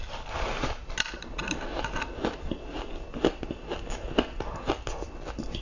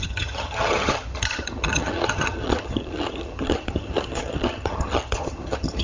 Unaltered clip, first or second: first